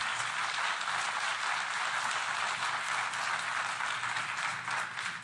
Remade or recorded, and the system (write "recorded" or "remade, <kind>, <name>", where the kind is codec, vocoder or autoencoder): recorded